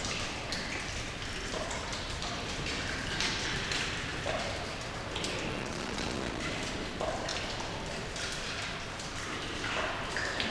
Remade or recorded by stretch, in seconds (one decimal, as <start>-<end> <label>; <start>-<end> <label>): 0.0-5.5 recorded; 5.5-6.4 remade; 6.4-10.5 recorded